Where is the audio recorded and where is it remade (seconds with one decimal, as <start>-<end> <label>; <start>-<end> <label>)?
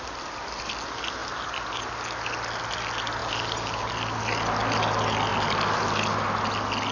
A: 0.0-6.9 recorded